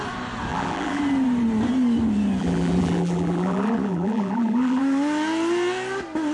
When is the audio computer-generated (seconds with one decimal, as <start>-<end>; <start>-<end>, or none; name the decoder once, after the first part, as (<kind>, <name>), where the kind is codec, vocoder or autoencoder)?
0.5-1.0 (vocoder, BigVGAN v2); 2.4-4.8